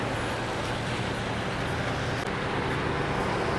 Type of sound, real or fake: real